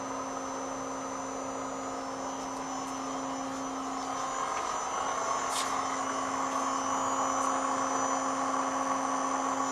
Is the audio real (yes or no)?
yes